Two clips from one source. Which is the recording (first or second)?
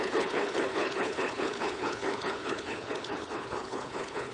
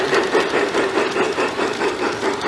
second